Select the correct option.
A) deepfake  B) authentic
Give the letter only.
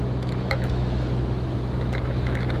A